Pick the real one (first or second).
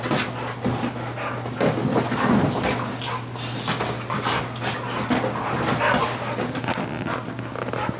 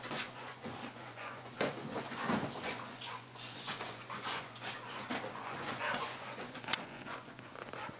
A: first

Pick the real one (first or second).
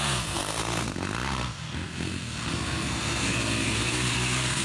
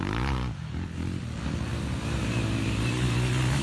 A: second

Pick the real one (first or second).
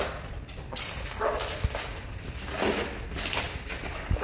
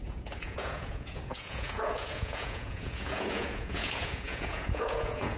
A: first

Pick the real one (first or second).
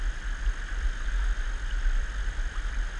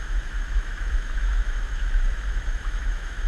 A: first